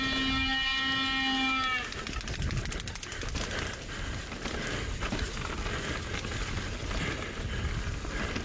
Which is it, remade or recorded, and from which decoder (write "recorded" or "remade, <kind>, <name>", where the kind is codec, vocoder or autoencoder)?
recorded